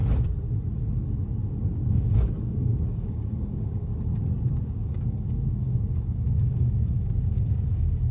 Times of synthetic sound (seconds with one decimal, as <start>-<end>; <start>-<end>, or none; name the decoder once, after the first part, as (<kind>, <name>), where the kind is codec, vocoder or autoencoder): 1.5-3.9 (codec, DAC); 4.5-8.1